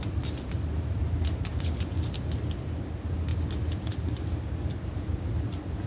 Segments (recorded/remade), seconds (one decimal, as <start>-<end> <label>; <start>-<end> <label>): 0.0-5.9 recorded